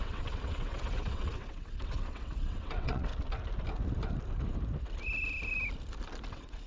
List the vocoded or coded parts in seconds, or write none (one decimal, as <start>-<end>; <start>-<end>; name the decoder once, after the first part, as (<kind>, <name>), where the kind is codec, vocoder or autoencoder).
0.0-3.1 (vocoder, WaveNeXt); 6.3-6.7